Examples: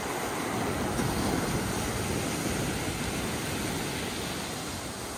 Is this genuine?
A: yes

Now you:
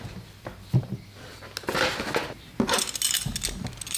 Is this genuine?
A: yes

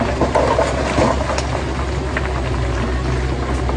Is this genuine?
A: yes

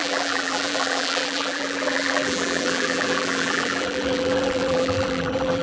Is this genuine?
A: no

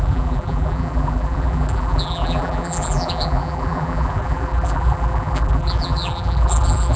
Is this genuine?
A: no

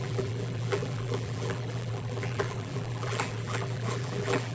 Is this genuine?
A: no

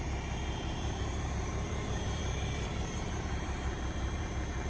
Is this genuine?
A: no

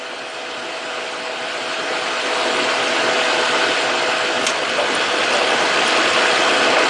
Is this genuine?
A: yes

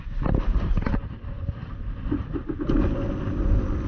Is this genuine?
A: no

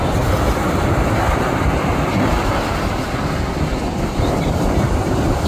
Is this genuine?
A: no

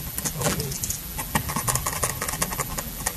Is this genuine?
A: no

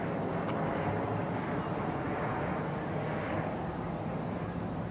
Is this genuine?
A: yes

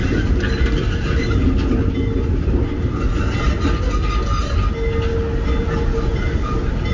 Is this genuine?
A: yes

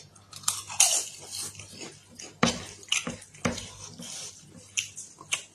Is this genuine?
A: no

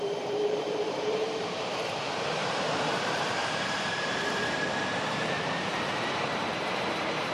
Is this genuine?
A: no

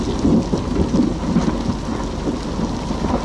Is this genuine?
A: yes